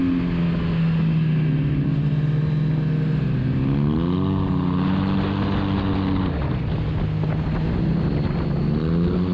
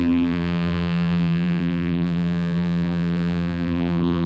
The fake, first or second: second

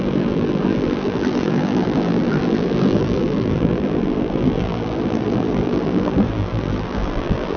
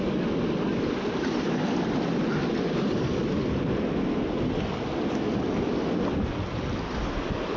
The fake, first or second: first